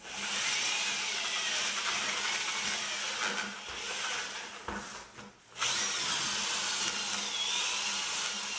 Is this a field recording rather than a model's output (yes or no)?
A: yes